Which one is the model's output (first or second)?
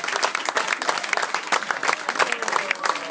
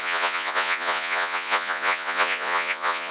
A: second